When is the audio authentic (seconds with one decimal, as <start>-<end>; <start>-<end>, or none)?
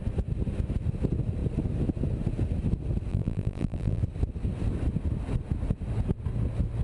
0.0-3.1; 4.0-6.8